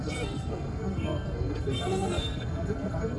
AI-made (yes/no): yes